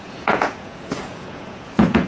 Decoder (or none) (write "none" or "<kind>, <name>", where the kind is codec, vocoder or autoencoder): vocoder, Vocos